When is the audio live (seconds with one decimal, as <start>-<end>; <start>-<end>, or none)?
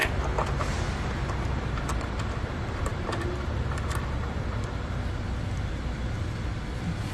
0.0-7.1